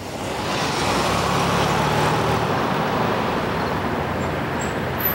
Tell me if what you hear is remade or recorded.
recorded